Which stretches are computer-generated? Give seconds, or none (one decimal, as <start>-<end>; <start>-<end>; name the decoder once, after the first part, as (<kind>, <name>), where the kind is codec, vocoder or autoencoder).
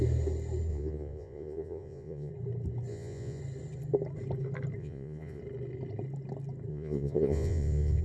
0.7-2.3 (vocoder, Vocos); 2.9-3.4; 4.8-5.4; 6.7-8.0